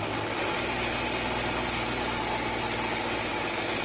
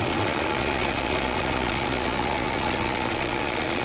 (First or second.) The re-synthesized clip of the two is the second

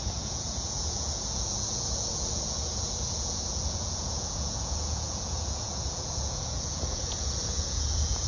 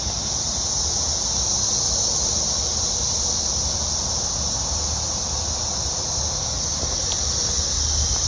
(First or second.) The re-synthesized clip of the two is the first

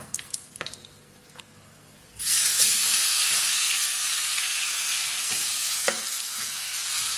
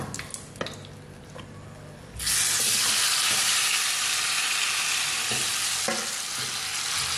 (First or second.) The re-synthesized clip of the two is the first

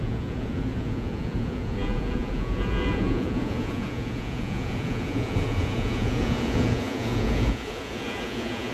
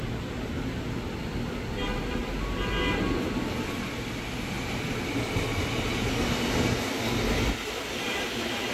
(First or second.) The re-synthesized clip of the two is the first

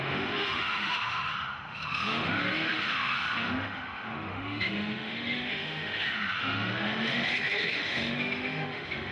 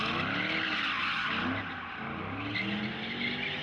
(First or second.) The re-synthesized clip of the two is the first